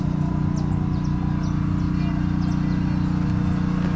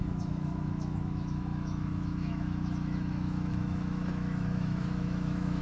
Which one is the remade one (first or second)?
second